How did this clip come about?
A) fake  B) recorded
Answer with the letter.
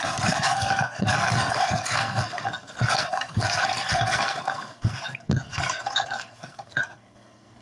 A